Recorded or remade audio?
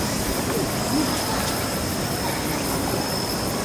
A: recorded